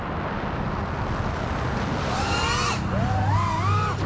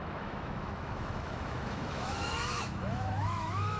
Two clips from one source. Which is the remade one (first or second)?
second